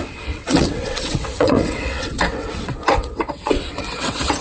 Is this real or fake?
fake